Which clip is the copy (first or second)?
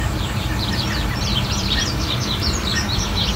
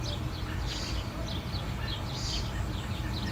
first